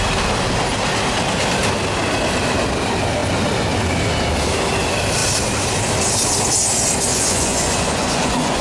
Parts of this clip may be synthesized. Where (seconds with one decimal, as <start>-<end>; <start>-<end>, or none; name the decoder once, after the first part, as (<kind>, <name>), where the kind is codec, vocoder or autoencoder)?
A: 7.1-8.6 (vocoder, Vocos)